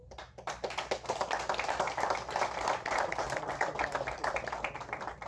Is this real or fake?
real